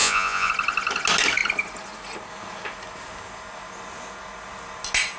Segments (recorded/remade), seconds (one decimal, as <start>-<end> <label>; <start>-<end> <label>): 0.0-0.5 remade; 0.5-5.2 recorded